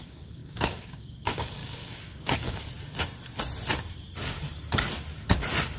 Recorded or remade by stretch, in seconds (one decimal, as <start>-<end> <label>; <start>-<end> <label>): 0.0-2.6 remade; 2.6-5.8 recorded